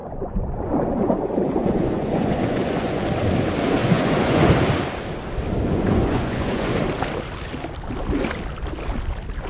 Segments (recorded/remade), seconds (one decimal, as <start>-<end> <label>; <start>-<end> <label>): 0.0-3.0 remade; 3.0-3.8 recorded; 3.8-4.5 remade; 4.5-5.6 recorded; 5.6-6.8 remade; 6.8-9.5 recorded